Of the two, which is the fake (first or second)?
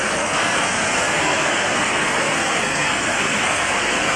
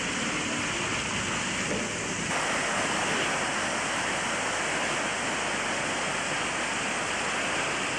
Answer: first